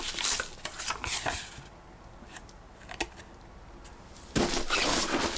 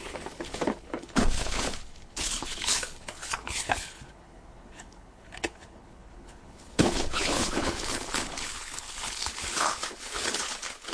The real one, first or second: first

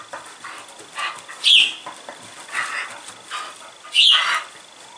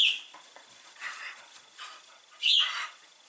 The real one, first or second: first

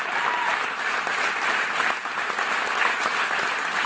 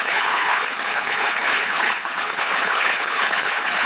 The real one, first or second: first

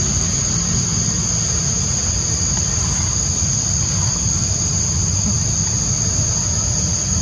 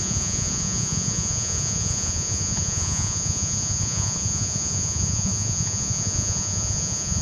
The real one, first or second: first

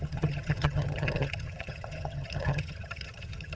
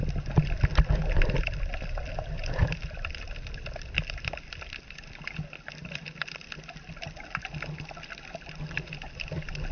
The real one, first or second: second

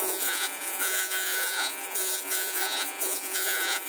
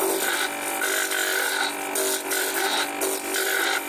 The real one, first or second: second